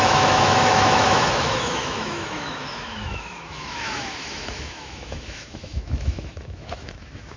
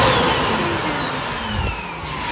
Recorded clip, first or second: second